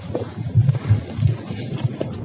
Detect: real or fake real